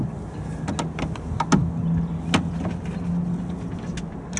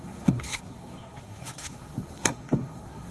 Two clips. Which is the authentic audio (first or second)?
first